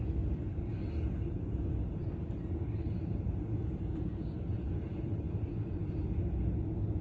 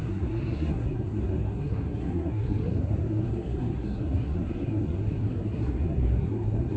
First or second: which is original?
first